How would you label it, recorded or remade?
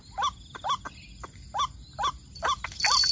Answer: recorded